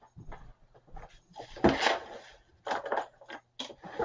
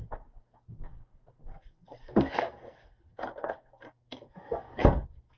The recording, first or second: first